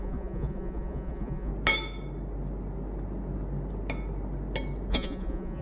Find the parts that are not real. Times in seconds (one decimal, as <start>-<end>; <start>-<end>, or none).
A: 0.0-1.5; 4.9-5.6